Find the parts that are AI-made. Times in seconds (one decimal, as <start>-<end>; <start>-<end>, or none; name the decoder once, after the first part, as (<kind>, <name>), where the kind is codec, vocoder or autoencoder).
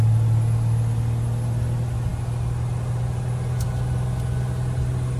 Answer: none